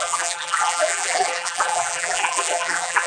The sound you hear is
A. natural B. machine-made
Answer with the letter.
B